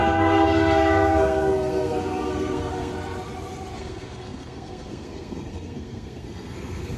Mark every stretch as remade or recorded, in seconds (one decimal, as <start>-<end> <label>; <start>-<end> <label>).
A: 0.0-2.9 remade; 2.9-3.8 recorded; 3.8-7.0 remade